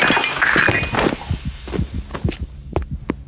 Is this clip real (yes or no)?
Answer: yes